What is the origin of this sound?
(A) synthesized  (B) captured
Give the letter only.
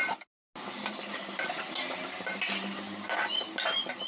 B